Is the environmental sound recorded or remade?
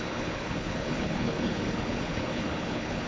remade